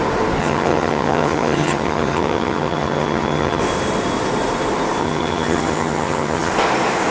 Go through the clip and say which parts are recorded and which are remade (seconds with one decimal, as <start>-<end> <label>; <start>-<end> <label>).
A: 0.0-0.4 recorded; 0.4-3.6 remade; 3.6-5.0 recorded; 5.0-6.5 remade; 6.5-7.1 recorded